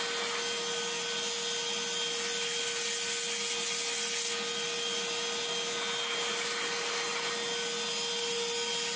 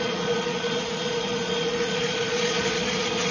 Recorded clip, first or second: first